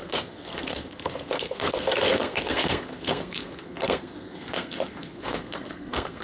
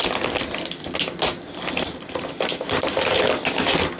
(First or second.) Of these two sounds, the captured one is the second